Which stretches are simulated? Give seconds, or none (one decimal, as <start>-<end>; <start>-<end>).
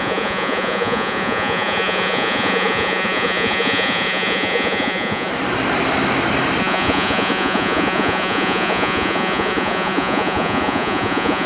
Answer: 0.0-5.3; 6.6-11.5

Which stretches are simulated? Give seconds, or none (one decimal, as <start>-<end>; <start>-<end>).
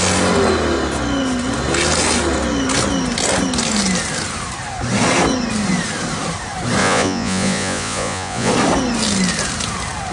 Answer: 6.8-8.5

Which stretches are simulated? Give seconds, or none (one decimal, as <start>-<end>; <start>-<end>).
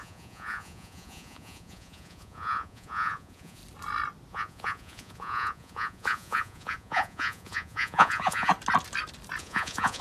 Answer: 0.0-3.6; 4.3-8.5; 9.4-10.0